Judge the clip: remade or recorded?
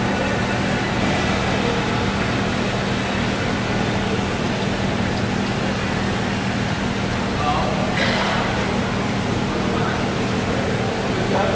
recorded